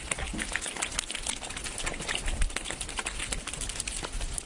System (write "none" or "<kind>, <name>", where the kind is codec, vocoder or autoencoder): none